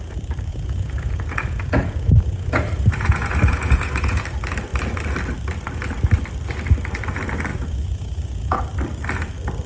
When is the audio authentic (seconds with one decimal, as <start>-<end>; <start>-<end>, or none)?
0.0-0.5; 4.2-7.5; 8.6-9.7